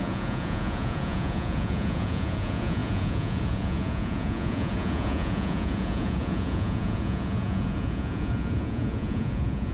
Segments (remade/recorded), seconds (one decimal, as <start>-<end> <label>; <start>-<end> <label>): 0.0-9.7 remade